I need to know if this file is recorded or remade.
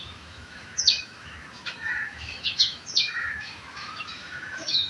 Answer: remade